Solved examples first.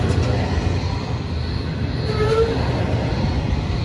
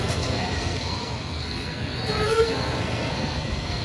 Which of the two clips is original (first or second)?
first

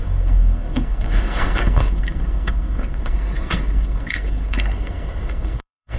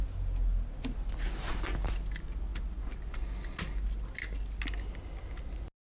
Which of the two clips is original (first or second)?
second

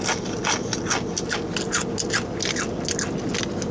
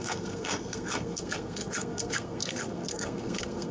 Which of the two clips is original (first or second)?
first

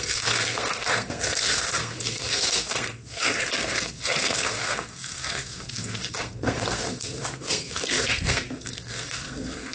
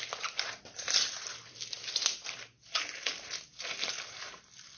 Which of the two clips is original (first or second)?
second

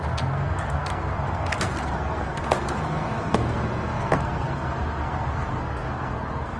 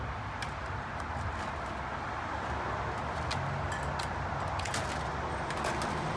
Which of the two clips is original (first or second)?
second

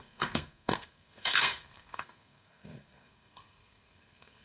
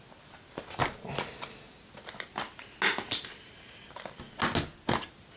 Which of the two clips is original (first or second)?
second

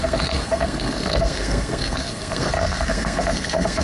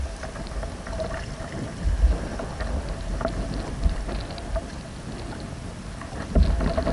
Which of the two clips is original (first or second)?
second